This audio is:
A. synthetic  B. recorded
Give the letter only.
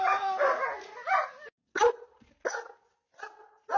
B